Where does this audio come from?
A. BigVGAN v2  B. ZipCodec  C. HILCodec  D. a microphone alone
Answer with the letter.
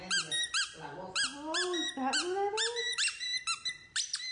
D